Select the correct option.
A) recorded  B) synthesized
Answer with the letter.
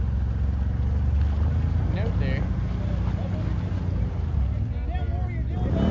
A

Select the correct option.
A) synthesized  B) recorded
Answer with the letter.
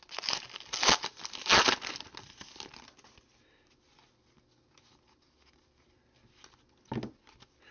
B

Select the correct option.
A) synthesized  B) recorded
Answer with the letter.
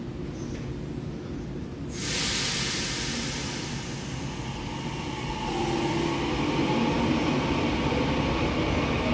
B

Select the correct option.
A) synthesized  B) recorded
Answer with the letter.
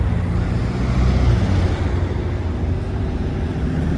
B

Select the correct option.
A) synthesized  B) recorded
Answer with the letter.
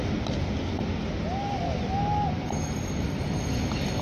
B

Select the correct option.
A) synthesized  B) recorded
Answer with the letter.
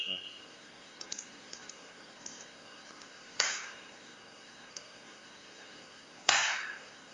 A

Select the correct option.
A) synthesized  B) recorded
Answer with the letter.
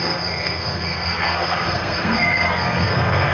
A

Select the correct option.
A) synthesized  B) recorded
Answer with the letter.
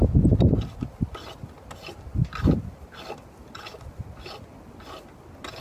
B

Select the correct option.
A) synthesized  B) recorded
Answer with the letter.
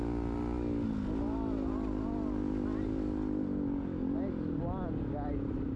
B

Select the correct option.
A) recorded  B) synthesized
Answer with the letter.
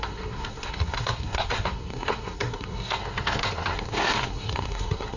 B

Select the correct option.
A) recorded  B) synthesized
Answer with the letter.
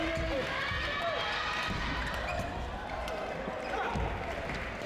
A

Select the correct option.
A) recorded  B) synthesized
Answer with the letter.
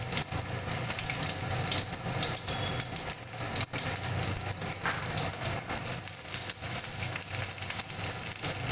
A